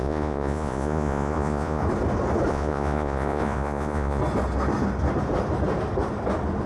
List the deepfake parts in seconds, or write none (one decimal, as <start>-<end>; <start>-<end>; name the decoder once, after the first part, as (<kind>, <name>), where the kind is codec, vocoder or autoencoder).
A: 0.0-1.8 (vocoder, Vocos); 2.5-4.2